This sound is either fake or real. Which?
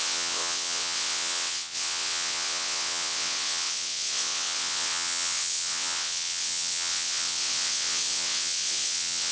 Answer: fake